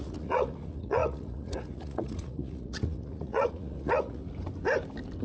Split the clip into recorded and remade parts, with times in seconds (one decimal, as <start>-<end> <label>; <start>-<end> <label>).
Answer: 0.0-4.2 remade; 4.2-5.2 recorded